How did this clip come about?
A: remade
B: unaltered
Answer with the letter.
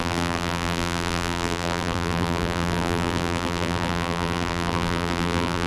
A